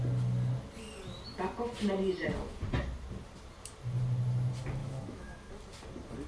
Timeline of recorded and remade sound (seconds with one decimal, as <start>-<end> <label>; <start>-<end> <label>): 0.0-4.8 recorded; 4.8-5.5 remade; 5.5-6.3 recorded

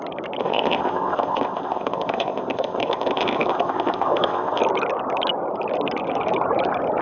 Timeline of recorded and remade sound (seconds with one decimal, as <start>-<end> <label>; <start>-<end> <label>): 0.0-0.4 recorded; 0.4-4.6 remade; 4.6-7.0 recorded

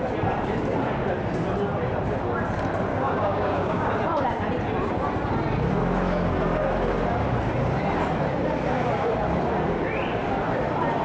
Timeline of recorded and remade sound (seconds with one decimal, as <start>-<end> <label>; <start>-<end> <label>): 0.0-2.9 recorded; 2.9-3.9 remade; 3.9-11.0 recorded

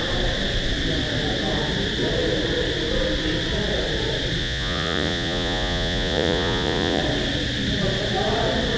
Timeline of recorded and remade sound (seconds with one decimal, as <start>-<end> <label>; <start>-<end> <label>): 0.0-4.4 recorded; 4.4-7.0 remade; 7.0-8.8 recorded

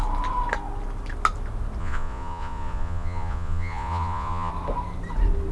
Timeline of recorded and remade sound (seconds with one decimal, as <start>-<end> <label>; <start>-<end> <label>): 0.0-1.8 recorded; 1.8-4.5 remade; 4.5-5.5 recorded

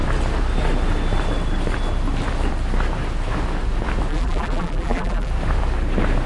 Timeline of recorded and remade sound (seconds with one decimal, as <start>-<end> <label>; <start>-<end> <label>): 0.0-4.1 recorded; 4.1-5.3 remade; 5.3-6.3 recorded

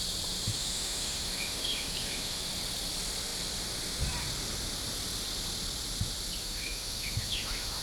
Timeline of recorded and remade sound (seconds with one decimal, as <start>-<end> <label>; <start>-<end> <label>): 0.0-0.5 recorded; 0.5-2.4 remade; 2.4-6.4 recorded; 6.4-7.8 remade